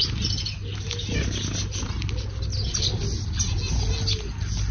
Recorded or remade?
recorded